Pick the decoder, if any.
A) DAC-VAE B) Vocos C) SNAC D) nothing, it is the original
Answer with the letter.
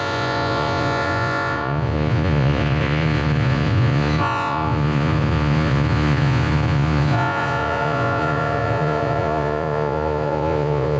B